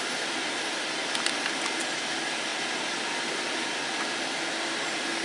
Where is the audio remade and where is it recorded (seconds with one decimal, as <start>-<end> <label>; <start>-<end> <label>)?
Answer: 0.0-5.2 recorded